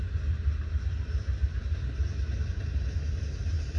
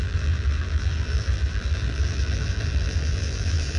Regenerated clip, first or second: second